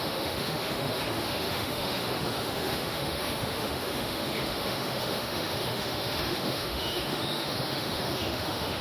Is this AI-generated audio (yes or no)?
yes